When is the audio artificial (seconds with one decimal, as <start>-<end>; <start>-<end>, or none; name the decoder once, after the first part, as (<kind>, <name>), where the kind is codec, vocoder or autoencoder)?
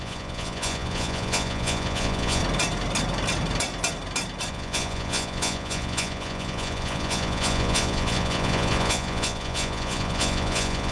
0.0-2.4 (vocoder, Vocos); 4.5-10.9